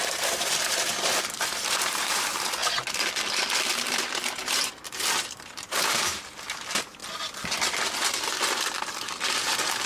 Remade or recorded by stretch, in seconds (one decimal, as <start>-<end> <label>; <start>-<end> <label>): 0.0-2.6 remade; 2.6-3.7 recorded; 3.7-7.0 remade; 7.0-8.8 recorded; 8.8-9.9 remade